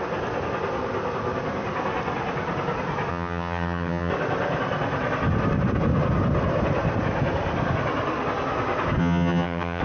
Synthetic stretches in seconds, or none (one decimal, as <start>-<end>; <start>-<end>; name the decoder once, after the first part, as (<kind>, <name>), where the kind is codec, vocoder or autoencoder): 3.1-4.1 (vocoder, HiFi-GAN); 9.0-9.8